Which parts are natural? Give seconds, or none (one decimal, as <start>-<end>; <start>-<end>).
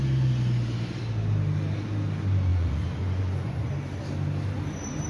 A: 0.0-2.5; 3.7-5.1